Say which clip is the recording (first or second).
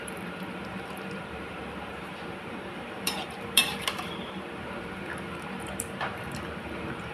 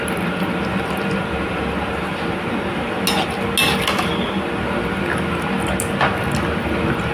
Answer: second